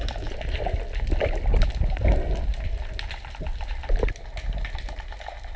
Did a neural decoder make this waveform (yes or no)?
no